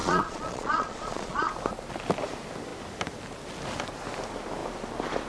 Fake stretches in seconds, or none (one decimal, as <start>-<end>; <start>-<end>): 0.0-1.5